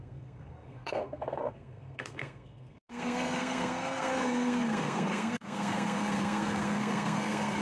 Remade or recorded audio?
remade